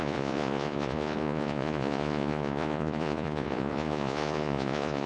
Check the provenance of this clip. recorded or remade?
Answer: remade